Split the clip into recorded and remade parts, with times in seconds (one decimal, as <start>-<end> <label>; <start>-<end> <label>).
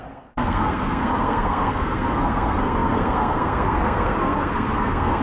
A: 0.0-5.2 remade